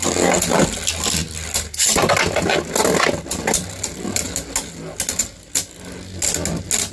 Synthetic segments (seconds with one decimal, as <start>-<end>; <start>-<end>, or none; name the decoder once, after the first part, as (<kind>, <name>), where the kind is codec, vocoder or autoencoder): none